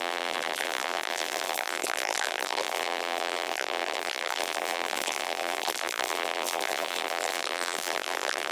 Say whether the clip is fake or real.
fake